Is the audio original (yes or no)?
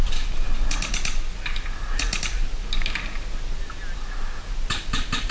yes